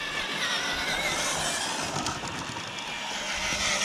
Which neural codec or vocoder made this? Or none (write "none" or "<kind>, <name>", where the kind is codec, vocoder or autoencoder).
none